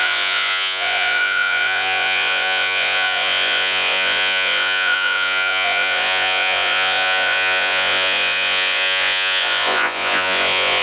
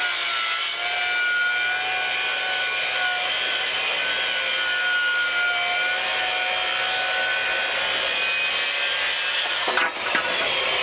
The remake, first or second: first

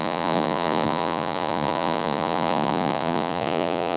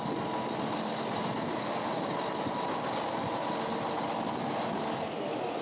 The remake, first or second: first